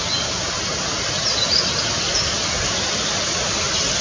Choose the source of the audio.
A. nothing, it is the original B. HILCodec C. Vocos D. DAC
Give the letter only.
A